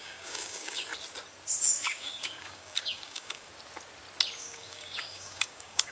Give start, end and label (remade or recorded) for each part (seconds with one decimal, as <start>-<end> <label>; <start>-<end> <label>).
0.0-0.9 remade; 0.9-1.6 recorded; 1.6-3.5 remade; 3.5-4.4 recorded; 4.4-5.9 remade